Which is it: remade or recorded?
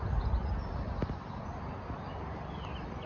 recorded